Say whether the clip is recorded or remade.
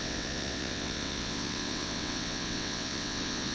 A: remade